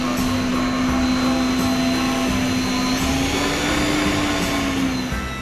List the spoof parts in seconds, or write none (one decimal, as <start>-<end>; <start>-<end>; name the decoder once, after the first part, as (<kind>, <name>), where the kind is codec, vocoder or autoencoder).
none